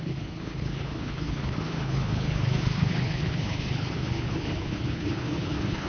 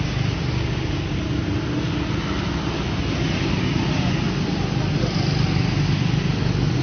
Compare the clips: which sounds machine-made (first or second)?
first